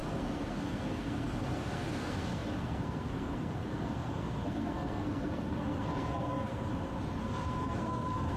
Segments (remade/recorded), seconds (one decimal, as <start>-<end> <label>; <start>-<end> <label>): 0.0-6.7 remade; 6.7-7.2 recorded; 7.2-8.4 remade

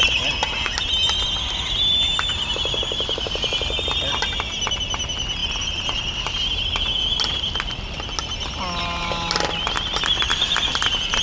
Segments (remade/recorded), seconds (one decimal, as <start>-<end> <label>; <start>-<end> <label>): 0.0-11.2 recorded

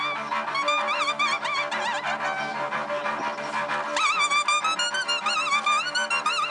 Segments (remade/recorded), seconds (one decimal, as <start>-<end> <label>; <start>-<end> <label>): 0.0-6.5 recorded

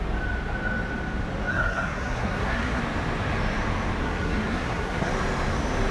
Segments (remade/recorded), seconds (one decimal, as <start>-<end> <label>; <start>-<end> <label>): 0.0-1.5 recorded; 1.5-2.8 remade; 2.8-4.0 recorded; 4.0-5.1 remade; 5.1-5.9 recorded

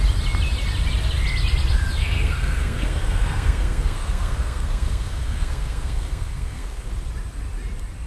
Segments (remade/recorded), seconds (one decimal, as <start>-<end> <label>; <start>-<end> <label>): 0.0-2.0 recorded; 2.0-6.9 remade; 6.9-8.1 recorded

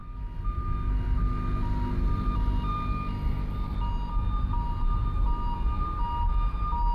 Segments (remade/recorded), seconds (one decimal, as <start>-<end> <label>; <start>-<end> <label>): 0.0-6.9 recorded